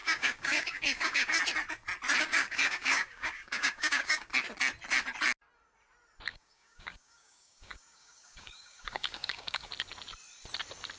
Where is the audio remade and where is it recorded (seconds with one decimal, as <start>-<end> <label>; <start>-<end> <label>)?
0.0-1.4 remade; 1.4-2.2 recorded; 2.2-4.3 remade; 4.3-6.3 recorded; 6.3-9.7 remade; 9.7-11.0 recorded